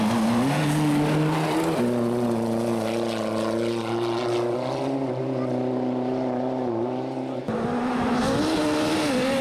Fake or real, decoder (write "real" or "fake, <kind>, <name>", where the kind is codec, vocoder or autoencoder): real